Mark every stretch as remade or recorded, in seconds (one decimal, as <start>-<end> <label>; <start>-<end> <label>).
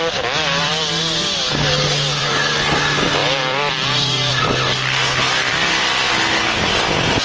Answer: 0.0-7.2 remade